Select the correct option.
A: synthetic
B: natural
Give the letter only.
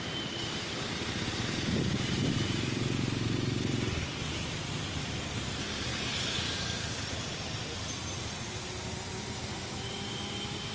B